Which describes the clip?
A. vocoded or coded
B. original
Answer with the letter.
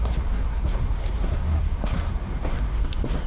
A